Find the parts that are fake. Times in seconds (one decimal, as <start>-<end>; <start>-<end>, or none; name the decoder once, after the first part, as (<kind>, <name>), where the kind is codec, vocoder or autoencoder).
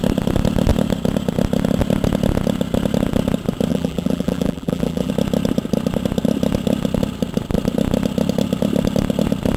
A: 3.7-5.1 (vocoder, BigVGAN v2)